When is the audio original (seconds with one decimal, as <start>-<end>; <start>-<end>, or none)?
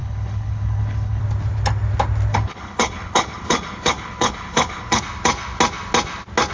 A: 1.2-2.3; 5.0-6.5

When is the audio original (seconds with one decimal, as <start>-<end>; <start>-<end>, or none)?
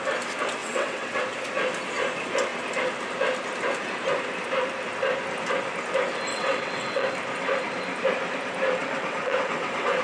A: 0.0-0.6; 1.2-6.3; 7.1-8.8